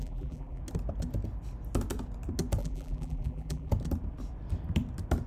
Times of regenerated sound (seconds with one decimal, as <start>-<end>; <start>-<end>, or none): 0.0-0.6; 2.6-3.7